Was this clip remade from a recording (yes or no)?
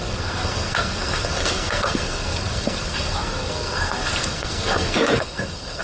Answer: yes